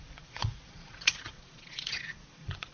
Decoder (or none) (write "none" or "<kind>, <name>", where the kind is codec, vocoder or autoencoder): vocoder, Vocos